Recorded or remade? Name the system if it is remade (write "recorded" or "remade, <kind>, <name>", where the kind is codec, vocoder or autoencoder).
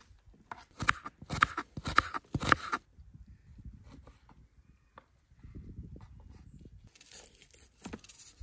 recorded